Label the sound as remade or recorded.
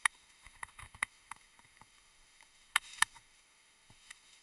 remade